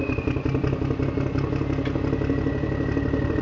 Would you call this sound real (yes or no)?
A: yes